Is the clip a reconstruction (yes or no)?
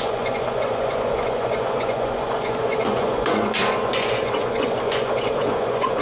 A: yes